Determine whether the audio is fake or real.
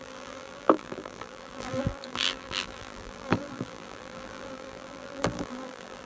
fake